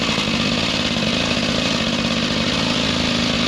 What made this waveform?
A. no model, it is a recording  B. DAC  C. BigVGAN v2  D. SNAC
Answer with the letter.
A